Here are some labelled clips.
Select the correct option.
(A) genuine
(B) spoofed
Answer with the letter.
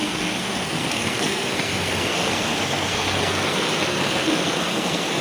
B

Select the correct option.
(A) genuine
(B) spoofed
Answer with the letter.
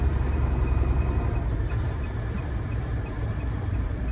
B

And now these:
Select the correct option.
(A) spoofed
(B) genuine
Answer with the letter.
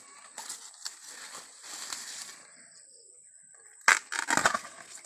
B